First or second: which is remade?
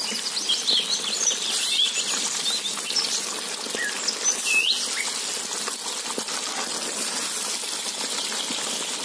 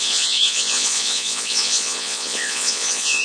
second